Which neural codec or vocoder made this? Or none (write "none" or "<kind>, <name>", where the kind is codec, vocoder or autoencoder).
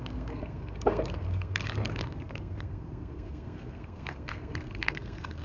codec, SNAC